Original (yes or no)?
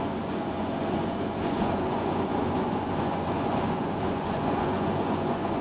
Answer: no